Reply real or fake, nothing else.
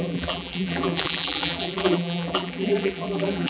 fake